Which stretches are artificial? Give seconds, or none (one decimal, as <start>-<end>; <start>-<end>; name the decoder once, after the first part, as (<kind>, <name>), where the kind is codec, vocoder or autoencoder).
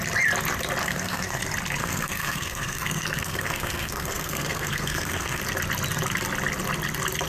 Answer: 0.8-1.4 (codec, SNAC); 1.8-5.4